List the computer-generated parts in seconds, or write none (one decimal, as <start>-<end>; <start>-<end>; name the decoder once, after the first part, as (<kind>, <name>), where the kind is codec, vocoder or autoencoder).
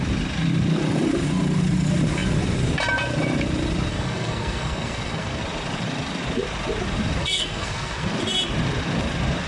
3.9-5.4 (codec, SNAC); 7.2-8.1